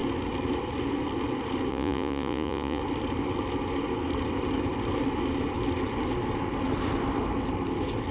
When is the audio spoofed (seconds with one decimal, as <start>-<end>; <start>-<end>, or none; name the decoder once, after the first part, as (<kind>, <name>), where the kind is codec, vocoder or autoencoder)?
1.7-2.8 (vocoder, Vocos)